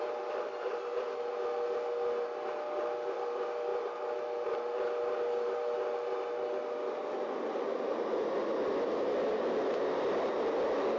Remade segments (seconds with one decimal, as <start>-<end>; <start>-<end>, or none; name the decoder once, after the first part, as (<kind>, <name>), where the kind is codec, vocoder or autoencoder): none